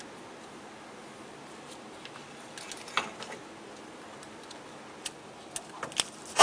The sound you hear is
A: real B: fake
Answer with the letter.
A